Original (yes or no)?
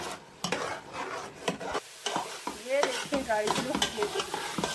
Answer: yes